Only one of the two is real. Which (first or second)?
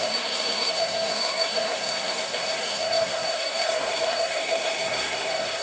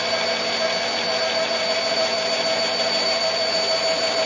second